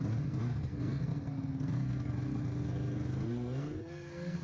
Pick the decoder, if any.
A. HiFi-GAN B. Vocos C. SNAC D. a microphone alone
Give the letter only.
C